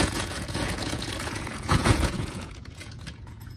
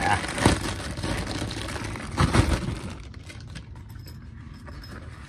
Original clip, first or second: second